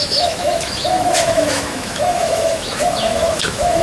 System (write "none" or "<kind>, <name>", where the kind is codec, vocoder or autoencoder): autoencoder, DAC-VAE